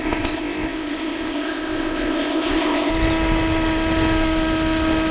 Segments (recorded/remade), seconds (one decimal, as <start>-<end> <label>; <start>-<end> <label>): 0.0-2.9 remade; 2.9-5.1 recorded